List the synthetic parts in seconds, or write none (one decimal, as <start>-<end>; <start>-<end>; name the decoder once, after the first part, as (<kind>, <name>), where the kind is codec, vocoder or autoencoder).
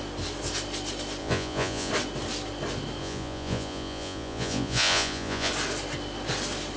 1.2-1.9 (vocoder, Vocos); 3.0-5.5